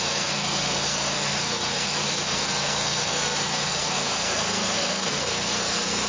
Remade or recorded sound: remade